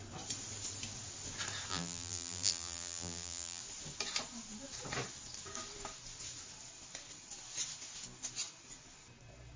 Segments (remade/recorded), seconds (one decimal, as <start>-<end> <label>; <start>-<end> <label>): 0.0-1.7 recorded; 1.7-3.6 remade; 3.6-9.6 recorded